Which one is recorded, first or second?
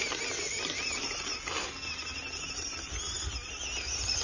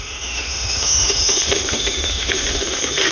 first